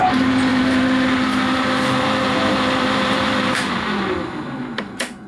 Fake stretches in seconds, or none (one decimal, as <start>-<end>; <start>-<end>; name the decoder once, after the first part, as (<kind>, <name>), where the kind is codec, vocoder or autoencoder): 0.5-3.7 (vocoder, BigVGAN v2)